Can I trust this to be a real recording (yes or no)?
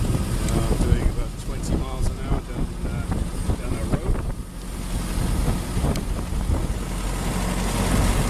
yes